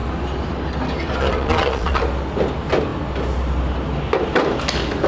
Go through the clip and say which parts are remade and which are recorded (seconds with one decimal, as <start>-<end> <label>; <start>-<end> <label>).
0.0-1.2 recorded; 1.2-2.0 remade; 2.0-5.1 recorded